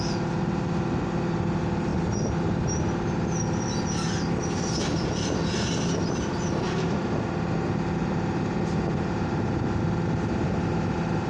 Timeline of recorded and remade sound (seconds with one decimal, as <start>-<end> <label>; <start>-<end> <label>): 0.0-11.3 recorded

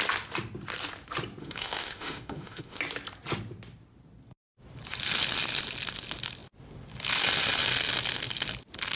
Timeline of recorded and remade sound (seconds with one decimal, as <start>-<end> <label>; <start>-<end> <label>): 0.0-1.4 recorded; 1.4-2.8 remade; 2.8-9.0 recorded

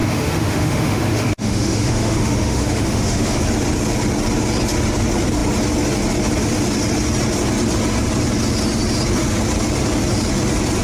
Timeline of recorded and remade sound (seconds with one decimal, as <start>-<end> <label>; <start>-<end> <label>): 0.0-3.4 remade; 3.4-10.8 recorded

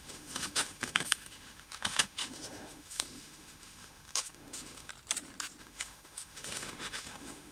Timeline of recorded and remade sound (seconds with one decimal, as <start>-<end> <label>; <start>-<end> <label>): 0.0-4.9 remade; 4.9-5.6 recorded; 5.6-7.5 remade

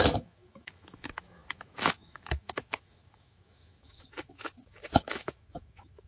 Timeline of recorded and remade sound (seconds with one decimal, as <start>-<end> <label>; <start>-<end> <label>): 0.0-6.1 remade